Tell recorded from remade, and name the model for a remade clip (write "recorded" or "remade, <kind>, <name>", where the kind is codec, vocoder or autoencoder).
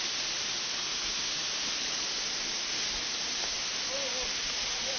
recorded